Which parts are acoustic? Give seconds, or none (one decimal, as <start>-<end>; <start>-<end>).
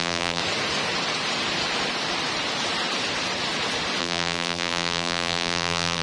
0.4-4.0